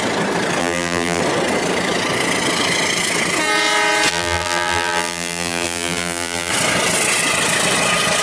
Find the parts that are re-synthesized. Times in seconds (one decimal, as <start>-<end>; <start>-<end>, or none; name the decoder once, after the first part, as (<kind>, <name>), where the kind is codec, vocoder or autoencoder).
0.6-1.2 (vocoder, BigVGAN v2); 4.1-6.5